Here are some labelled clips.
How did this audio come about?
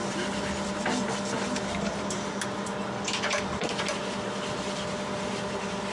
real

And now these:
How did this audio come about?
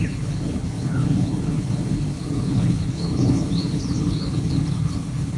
fake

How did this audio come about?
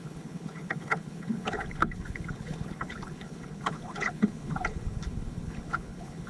fake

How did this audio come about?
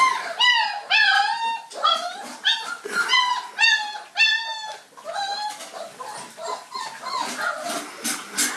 real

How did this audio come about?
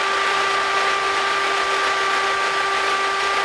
real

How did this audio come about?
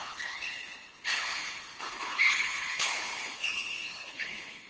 fake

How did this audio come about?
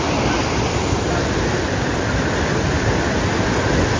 real